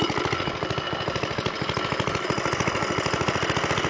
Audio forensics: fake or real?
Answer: real